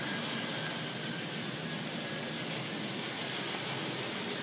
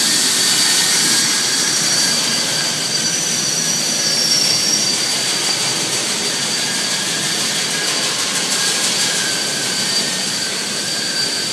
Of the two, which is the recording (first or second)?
first